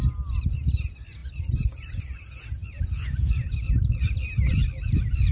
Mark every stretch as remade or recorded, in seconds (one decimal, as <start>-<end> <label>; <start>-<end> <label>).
0.0-5.3 recorded